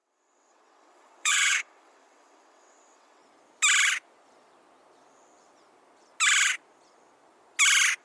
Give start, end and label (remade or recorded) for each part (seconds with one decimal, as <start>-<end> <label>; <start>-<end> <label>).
0.0-3.2 remade; 3.2-8.0 recorded